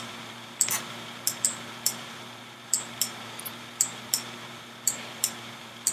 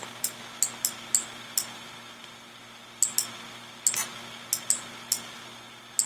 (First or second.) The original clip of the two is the second